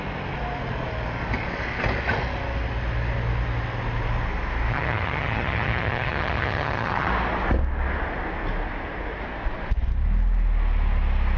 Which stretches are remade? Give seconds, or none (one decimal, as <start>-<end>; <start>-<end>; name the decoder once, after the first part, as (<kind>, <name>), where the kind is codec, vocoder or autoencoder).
4.7-7.1 (vocoder, HiFi-GAN)